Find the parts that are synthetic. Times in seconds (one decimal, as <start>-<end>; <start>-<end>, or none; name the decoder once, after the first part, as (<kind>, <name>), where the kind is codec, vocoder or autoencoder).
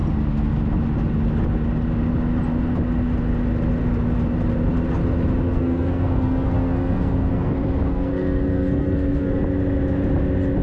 5.5-7.5 (codec, SNAC); 7.9-9.4